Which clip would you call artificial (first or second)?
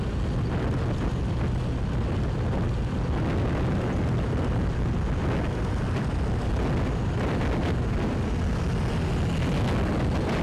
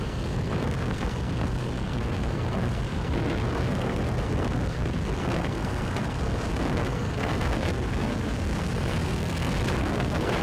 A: second